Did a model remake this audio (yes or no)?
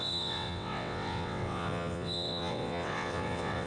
yes